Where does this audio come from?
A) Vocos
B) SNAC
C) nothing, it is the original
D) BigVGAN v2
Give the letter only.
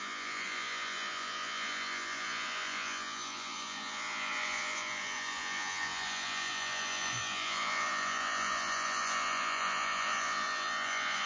A